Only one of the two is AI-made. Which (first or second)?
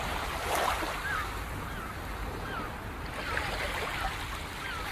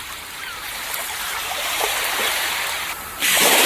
second